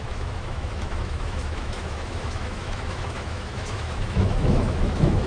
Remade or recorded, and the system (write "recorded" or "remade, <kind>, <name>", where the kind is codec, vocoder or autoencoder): remade, autoencoder, DAC-VAE